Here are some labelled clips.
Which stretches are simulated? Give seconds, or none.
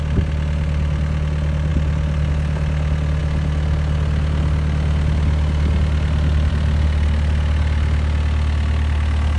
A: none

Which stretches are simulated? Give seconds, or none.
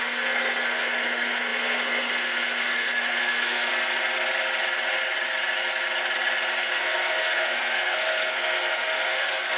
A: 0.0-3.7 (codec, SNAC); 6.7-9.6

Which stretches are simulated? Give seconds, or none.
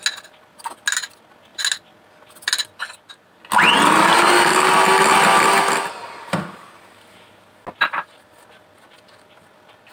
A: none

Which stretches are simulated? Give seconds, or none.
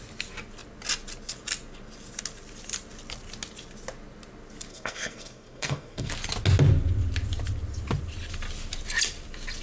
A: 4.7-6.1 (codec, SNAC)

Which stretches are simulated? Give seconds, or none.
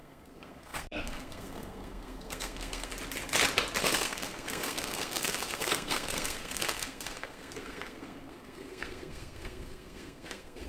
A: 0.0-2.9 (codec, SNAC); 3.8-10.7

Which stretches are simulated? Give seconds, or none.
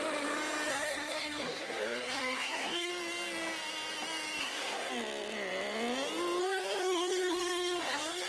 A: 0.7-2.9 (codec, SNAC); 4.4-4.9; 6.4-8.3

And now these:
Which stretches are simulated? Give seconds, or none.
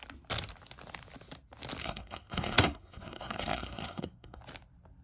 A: 1.8-4.4 (codec, SNAC)